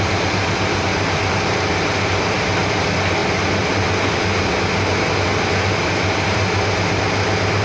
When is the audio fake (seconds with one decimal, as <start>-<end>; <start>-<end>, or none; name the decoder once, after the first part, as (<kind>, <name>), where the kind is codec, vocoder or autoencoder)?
none